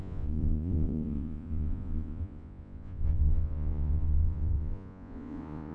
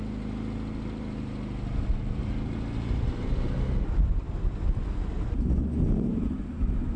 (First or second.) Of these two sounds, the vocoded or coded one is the first